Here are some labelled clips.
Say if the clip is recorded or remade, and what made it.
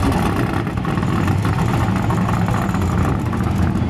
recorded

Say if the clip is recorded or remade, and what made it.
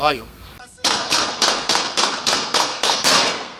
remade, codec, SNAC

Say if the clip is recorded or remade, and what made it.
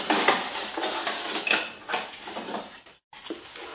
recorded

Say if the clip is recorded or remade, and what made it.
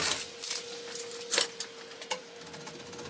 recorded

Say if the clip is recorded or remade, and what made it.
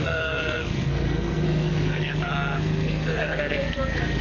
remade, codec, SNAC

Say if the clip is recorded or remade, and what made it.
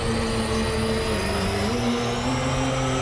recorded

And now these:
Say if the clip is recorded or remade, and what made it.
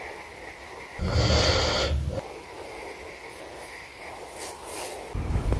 recorded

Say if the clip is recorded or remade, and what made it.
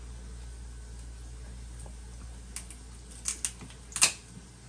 recorded